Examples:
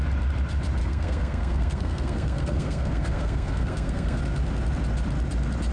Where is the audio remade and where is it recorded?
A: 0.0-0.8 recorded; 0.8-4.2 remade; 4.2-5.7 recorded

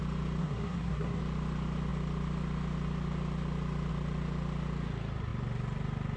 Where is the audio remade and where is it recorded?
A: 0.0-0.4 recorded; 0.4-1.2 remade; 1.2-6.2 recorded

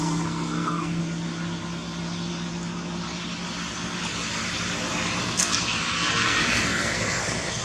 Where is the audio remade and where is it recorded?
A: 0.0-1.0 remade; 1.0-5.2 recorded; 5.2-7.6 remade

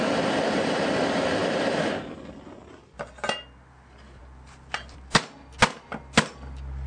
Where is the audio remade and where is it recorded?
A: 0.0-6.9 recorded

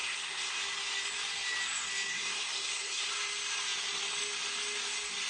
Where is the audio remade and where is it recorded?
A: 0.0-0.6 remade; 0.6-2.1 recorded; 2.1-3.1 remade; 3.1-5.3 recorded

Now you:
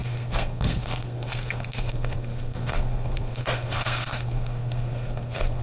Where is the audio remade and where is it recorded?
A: 0.0-5.6 remade